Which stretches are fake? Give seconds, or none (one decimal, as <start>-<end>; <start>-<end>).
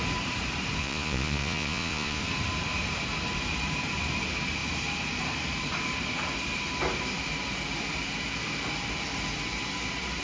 0.8-2.2